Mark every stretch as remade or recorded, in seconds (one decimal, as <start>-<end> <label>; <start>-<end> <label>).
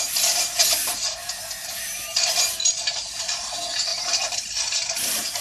0.0-5.4 recorded